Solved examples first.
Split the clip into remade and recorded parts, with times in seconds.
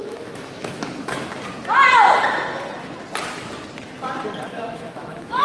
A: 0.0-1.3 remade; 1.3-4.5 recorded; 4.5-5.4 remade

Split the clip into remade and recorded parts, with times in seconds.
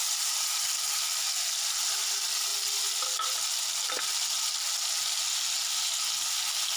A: 0.0-0.5 remade; 0.5-2.5 recorded; 2.5-4.0 remade; 4.0-6.8 recorded